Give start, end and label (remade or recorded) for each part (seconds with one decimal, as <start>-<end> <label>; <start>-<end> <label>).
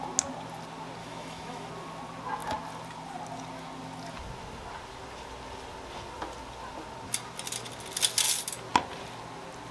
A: 0.0-1.0 recorded; 1.0-1.7 remade; 1.7-9.7 recorded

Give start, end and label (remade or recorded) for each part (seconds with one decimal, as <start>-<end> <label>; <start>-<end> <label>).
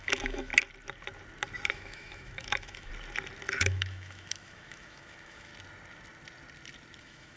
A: 0.0-0.5 remade; 0.5-1.7 recorded; 1.7-2.9 remade; 2.9-3.6 recorded; 3.6-5.5 remade; 5.5-7.0 recorded; 7.0-7.4 remade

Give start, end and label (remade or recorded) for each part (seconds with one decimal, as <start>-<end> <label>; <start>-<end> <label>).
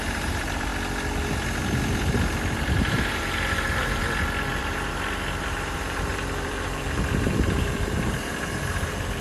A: 0.0-0.7 remade; 0.7-2.8 recorded; 2.8-4.0 remade; 4.0-4.6 recorded; 4.6-9.2 remade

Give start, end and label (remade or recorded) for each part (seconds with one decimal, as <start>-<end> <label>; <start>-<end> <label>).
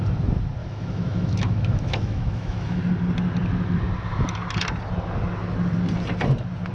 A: 0.0-0.6 recorded; 0.6-2.8 remade; 2.8-6.7 recorded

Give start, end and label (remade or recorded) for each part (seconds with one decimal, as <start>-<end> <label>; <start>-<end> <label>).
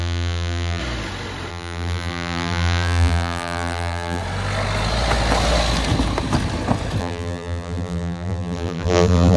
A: 0.0-0.8 remade; 0.8-1.5 recorded; 1.5-4.2 remade; 4.2-7.0 recorded; 7.0-9.4 remade